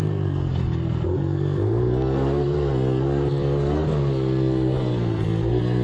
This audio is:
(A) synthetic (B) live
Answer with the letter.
A